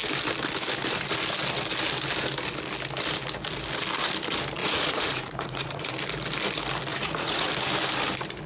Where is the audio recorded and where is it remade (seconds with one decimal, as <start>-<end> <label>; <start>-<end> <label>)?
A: 0.0-4.6 recorded; 4.6-5.9 remade; 5.9-6.9 recorded; 6.9-7.5 remade; 7.5-8.5 recorded